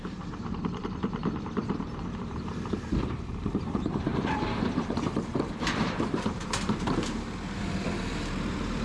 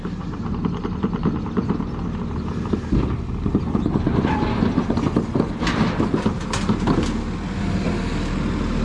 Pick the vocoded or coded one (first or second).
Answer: first